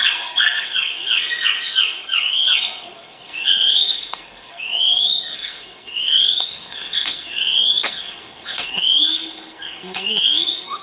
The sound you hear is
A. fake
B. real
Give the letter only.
A